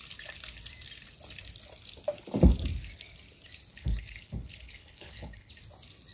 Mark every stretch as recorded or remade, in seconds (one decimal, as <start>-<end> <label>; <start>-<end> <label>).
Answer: 0.0-3.7 recorded; 3.7-5.5 remade; 5.5-6.1 recorded